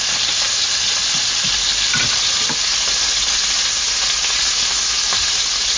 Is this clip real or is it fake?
real